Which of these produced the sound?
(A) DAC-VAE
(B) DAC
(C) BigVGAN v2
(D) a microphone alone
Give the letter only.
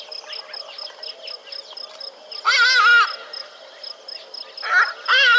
D